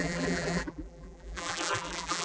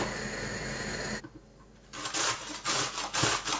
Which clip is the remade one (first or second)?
first